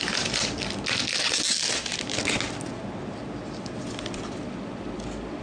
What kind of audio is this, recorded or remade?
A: recorded